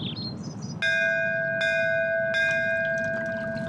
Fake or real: real